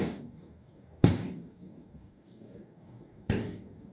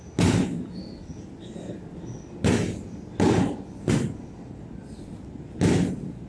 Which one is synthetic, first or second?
first